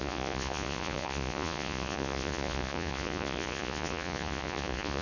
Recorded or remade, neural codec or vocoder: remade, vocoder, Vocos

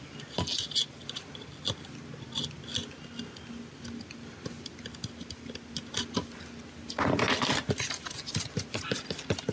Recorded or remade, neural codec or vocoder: recorded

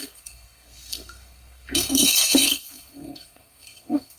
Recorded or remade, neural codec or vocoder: remade, codec, SNAC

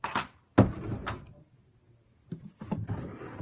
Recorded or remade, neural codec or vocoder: recorded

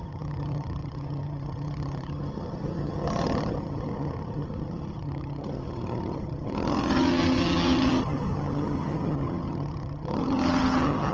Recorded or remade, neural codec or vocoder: remade, vocoder, HiFi-GAN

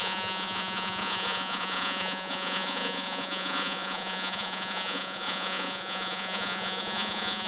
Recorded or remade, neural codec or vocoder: remade, vocoder, Vocos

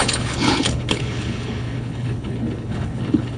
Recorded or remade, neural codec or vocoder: remade, codec, HILCodec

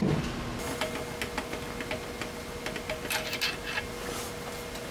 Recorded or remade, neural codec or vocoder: recorded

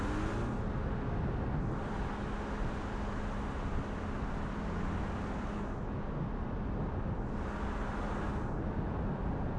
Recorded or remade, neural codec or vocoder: recorded